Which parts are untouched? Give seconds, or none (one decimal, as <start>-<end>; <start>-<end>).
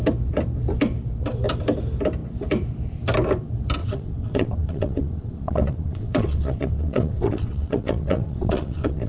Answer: 0.0-3.8